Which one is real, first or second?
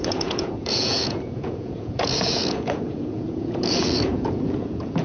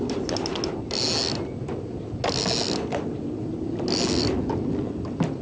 second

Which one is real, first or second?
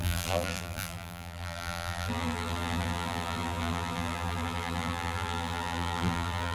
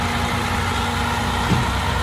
second